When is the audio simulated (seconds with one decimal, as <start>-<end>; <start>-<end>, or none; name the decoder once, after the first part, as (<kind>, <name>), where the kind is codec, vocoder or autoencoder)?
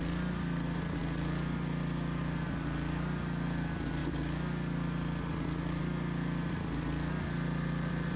none